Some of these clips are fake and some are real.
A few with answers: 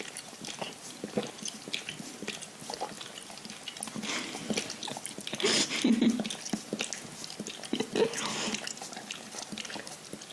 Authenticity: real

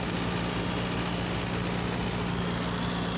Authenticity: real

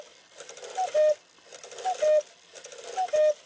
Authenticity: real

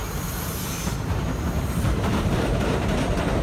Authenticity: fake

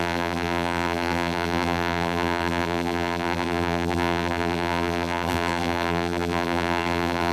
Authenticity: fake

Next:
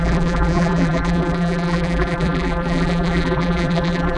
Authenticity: fake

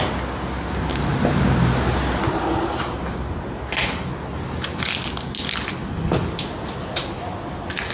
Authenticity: real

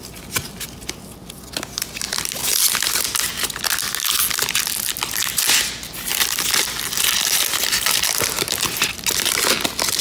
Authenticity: real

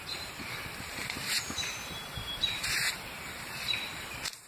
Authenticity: fake